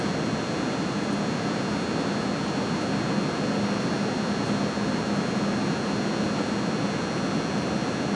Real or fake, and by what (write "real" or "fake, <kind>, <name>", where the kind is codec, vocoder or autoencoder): real